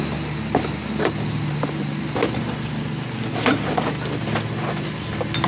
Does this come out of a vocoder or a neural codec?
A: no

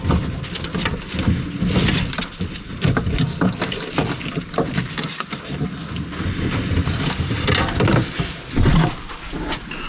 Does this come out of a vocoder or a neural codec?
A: no